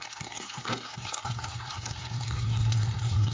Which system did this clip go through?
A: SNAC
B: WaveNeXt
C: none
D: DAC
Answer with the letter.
A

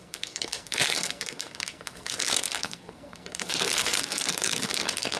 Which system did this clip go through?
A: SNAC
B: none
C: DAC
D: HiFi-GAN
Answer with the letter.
A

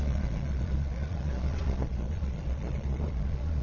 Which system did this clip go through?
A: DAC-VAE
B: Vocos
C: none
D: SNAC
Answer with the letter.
B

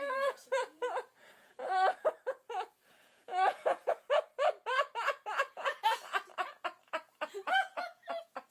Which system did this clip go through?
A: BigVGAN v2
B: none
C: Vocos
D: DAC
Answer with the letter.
C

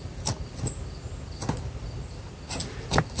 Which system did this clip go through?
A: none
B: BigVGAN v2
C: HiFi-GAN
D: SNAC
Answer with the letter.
A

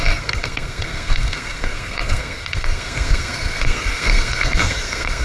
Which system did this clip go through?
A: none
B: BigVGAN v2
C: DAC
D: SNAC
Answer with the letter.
D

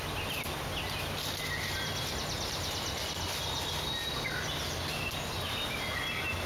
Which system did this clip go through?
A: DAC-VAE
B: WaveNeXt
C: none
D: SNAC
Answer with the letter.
C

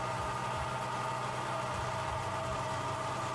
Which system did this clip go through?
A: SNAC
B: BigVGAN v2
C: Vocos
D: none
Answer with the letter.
D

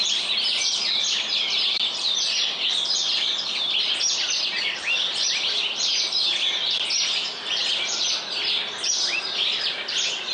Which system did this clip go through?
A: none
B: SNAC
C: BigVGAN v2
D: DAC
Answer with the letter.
C